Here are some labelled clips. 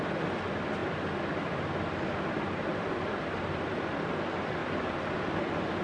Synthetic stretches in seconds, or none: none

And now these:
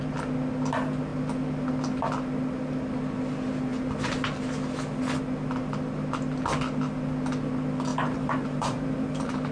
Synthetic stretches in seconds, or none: 7.9-9.5 (vocoder, BigVGAN v2)